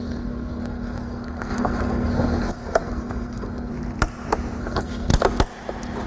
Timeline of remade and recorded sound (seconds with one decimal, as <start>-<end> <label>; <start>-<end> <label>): 0.0-3.7 remade; 3.7-4.6 recorded; 4.6-5.1 remade; 5.1-6.1 recorded